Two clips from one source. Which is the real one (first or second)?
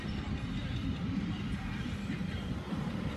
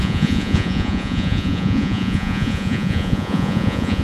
first